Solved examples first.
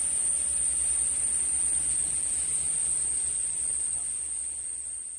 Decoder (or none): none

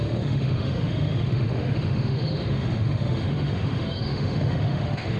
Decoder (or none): autoencoder, DAC-VAE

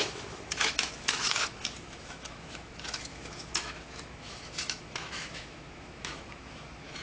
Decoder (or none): autoencoder, DAC-VAE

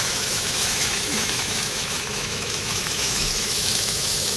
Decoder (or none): autoencoder, DAC-VAE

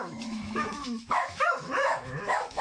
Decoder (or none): autoencoder, DAC-VAE